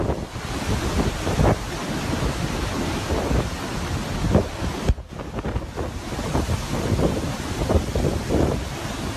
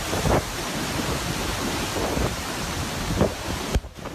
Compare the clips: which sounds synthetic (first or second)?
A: second